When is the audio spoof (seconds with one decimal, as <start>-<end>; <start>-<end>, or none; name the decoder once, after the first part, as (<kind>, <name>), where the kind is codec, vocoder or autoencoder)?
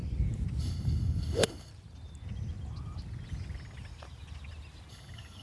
0.6-1.7 (codec, DAC); 4.9-5.4